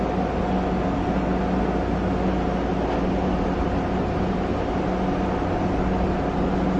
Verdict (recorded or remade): recorded